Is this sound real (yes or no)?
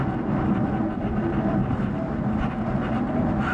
yes